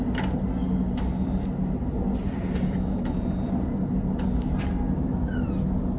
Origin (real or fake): real